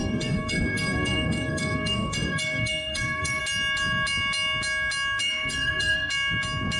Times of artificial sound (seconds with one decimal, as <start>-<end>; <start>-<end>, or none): 0.0-3.4; 5.2-6.1